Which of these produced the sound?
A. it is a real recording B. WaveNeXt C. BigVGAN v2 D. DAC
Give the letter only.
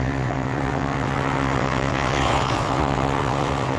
B